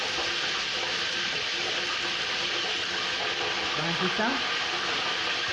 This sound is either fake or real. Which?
real